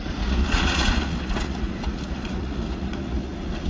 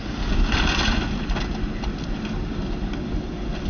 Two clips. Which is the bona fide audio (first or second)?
second